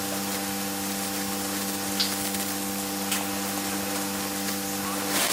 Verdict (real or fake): real